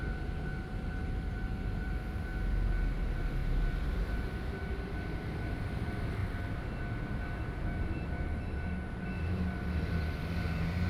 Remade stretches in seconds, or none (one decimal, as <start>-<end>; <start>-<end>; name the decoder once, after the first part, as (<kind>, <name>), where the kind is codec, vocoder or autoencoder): 0.0-2.3 (vocoder, BigVGAN v2); 2.9-6.2; 7.2-10.9